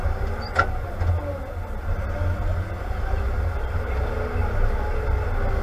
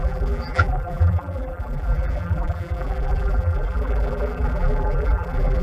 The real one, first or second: first